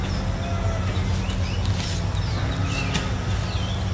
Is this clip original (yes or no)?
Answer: yes